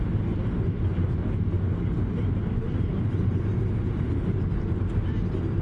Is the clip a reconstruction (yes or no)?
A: no